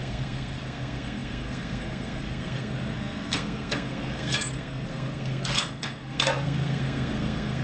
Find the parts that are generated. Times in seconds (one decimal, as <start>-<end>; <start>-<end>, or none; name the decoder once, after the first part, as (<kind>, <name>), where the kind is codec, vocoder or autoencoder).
0.0-7.6 (codec, SNAC)